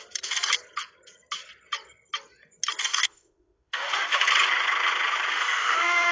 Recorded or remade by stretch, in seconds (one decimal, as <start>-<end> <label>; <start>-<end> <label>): 0.0-2.9 recorded; 2.9-4.3 remade; 4.3-5.3 recorded; 5.3-6.1 remade